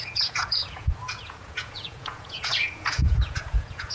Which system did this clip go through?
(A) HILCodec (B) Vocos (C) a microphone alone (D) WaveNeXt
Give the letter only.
B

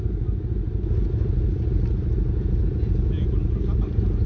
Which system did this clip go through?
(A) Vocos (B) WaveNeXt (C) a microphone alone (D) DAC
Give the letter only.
C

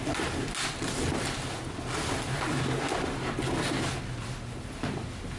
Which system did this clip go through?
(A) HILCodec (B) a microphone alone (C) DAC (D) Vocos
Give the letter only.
B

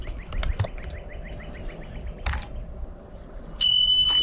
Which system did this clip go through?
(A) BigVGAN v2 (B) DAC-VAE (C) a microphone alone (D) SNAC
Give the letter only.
C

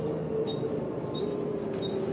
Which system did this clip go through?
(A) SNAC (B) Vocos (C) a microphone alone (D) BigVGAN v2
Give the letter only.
D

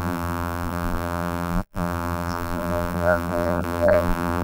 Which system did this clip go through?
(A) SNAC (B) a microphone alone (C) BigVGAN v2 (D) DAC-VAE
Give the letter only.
C